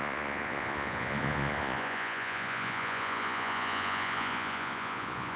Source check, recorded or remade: remade